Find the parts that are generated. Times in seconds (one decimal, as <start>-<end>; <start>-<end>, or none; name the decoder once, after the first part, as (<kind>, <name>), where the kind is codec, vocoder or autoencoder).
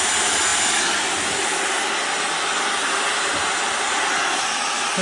none